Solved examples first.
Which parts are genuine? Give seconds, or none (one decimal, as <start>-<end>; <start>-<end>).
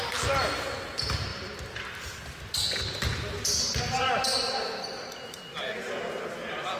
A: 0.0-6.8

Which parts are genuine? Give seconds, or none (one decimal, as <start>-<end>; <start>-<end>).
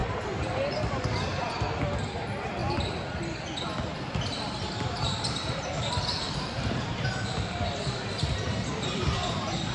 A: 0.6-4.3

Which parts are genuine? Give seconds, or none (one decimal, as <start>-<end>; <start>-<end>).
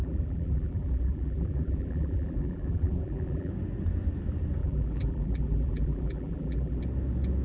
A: 3.5-4.6; 6.8-7.4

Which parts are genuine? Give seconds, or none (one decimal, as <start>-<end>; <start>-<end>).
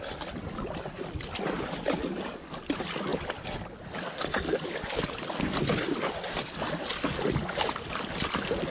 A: 0.0-8.7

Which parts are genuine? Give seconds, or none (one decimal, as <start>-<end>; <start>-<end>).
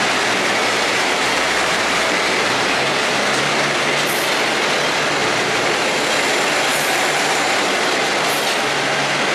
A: 0.0-0.6; 3.5-5.2; 6.1-6.7; 7.6-9.3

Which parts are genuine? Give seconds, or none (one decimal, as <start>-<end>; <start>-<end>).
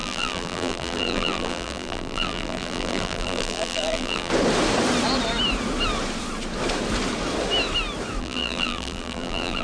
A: 4.3-8.2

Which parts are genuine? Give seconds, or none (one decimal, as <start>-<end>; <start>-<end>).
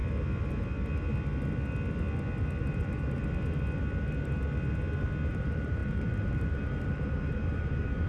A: 0.0-2.6; 3.2-5.3